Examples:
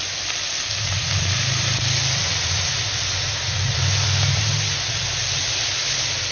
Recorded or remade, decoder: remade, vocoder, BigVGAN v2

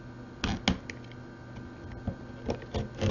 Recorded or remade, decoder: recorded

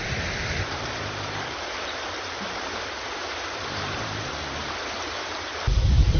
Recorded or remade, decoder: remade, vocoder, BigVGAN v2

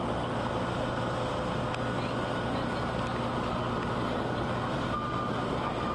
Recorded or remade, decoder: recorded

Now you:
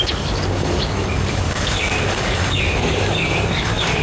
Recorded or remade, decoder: remade, codec, DAC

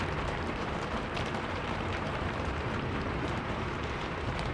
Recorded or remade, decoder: remade, vocoder, BigVGAN v2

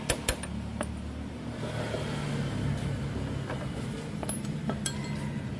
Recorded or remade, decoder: recorded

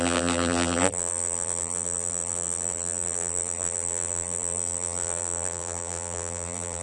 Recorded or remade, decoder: remade, vocoder, BigVGAN v2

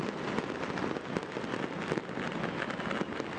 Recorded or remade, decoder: recorded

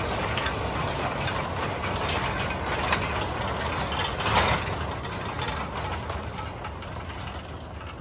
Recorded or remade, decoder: recorded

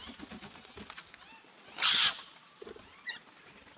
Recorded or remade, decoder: recorded